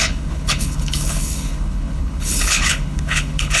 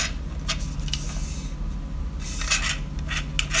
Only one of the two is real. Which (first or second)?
second